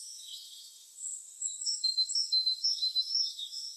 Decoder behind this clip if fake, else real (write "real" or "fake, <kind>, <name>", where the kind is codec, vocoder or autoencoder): fake, autoencoder, DAC-VAE